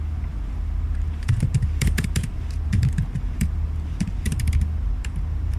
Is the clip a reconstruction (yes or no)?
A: yes